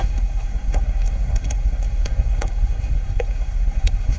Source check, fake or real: fake